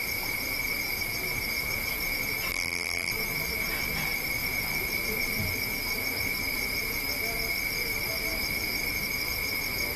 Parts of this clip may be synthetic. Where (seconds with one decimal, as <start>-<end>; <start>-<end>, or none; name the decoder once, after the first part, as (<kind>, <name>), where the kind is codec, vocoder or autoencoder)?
2.5-3.1 (vocoder, BigVGAN v2)